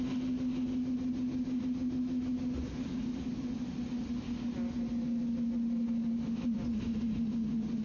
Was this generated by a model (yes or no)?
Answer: no